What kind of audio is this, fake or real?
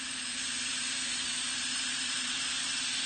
fake